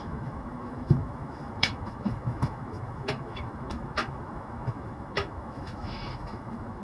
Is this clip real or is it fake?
fake